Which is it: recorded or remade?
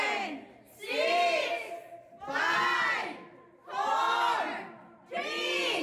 recorded